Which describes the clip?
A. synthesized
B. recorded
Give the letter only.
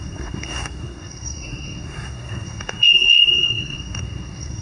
A